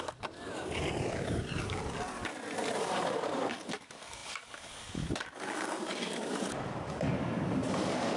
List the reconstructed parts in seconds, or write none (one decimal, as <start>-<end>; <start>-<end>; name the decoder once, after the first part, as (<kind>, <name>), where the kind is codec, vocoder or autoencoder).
0.0-2.3 (codec, DAC); 2.8-8.2